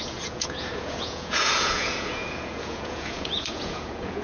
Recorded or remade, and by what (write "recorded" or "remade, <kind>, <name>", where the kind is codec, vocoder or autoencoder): remade, vocoder, Vocos